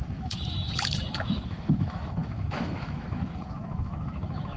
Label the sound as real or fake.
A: fake